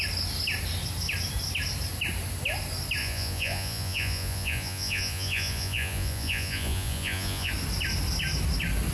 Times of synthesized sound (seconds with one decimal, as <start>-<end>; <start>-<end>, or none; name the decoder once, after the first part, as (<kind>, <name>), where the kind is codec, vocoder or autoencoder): 3.0-7.5 (vocoder, Vocos)

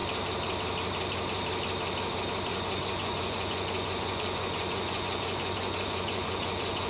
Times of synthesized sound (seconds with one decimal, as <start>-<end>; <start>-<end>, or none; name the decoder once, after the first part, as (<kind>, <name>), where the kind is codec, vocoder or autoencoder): 2.5-6.9 (vocoder, Vocos)

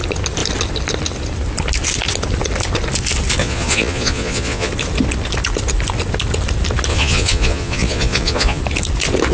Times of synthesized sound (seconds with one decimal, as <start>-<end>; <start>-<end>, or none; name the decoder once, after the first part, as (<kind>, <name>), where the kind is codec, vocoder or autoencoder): 3.4-4.7 (vocoder, Vocos); 6.9-8.6

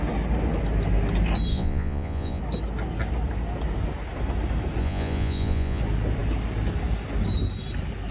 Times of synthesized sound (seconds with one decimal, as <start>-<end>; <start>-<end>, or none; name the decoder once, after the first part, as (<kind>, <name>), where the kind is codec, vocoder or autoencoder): 1.5-2.4 (vocoder, Vocos); 4.8-5.8

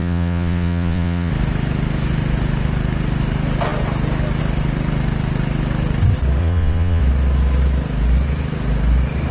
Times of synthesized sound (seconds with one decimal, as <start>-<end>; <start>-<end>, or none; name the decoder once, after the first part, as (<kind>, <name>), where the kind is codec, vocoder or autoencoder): 0.0-1.3 (vocoder, Vocos); 6.4-7.0

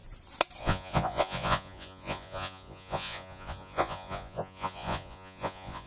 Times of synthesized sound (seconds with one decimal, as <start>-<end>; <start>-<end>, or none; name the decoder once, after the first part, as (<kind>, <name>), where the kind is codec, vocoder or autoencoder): 0.6-5.9 (vocoder, Vocos)